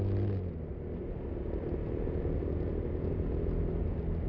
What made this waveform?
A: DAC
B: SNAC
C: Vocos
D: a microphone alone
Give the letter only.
D